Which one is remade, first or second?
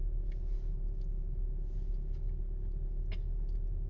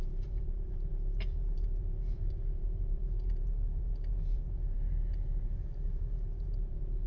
second